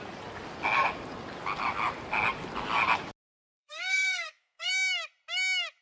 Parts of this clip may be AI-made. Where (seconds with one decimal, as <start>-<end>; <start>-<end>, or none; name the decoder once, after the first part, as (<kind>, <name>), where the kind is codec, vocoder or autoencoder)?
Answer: 3.4-4.7 (codec, SNAC)